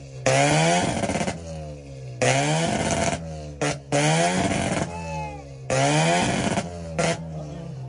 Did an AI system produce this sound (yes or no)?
no